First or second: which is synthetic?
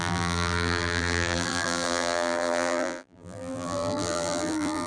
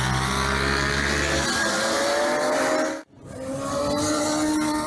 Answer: first